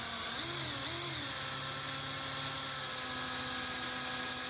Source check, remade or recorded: recorded